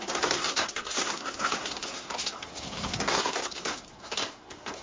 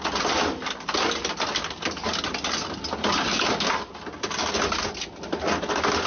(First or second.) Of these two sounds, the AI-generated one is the first